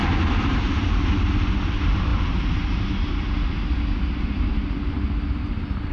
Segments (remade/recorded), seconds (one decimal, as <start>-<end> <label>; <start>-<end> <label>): 0.0-5.9 recorded

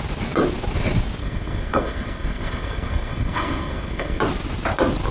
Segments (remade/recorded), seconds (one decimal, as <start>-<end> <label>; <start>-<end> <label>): 0.0-1.2 recorded; 1.2-4.2 remade; 4.2-5.1 recorded